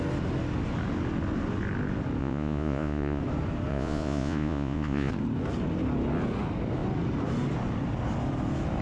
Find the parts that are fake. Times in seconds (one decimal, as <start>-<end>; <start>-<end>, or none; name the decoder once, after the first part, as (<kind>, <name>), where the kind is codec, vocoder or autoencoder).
2.2-3.2 (vocoder, Vocos); 3.7-5.1